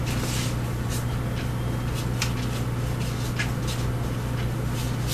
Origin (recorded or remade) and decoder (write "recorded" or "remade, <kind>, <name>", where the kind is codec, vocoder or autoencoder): recorded